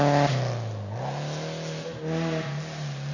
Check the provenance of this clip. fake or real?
real